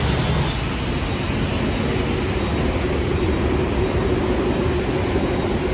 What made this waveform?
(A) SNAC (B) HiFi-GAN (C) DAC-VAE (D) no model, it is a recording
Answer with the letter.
D